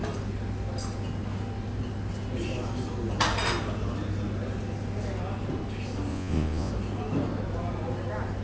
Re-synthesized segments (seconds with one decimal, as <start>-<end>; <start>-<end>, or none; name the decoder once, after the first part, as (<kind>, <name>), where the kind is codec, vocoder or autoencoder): 6.1-6.7 (vocoder, Vocos)